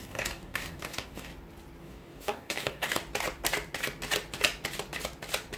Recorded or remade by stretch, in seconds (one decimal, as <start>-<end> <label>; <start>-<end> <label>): 0.0-1.3 remade; 1.3-1.8 recorded; 1.8-3.0 remade; 3.0-5.6 recorded